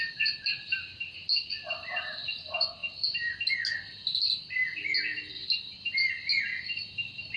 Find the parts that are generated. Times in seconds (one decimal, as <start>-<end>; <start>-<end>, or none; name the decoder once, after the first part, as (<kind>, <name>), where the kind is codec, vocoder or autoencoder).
none